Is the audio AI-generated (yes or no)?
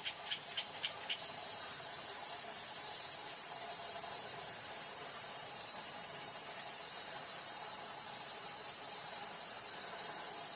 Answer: yes